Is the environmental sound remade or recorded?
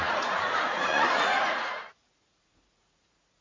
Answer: remade